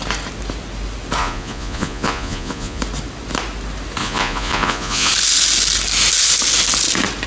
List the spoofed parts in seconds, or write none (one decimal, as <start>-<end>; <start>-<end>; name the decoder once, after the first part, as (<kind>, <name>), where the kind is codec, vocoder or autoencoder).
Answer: 1.2-2.8 (vocoder, Vocos); 4.0-5.1